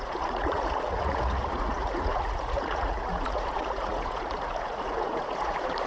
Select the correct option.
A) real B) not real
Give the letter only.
B